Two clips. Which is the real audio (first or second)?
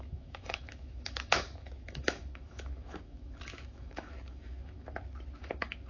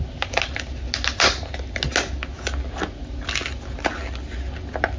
second